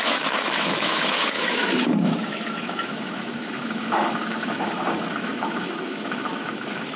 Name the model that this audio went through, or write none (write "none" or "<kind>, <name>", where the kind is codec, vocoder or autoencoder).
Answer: autoencoder, DAC-VAE